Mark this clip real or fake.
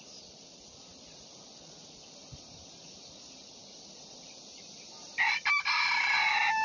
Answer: real